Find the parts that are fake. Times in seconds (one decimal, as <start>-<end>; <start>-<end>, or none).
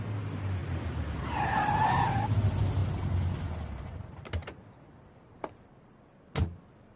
none